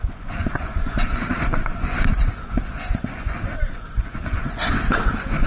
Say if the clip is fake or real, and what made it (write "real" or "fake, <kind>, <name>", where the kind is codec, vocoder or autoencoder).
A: fake, vocoder, Vocos